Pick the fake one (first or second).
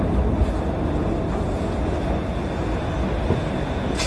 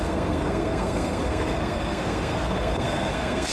second